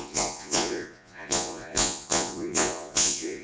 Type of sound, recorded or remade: remade